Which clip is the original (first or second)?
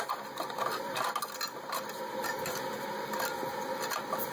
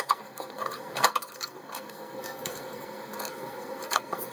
first